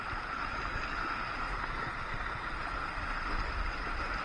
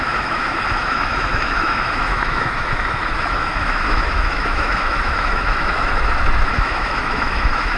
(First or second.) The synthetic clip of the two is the second